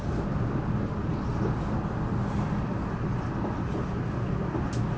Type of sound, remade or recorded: recorded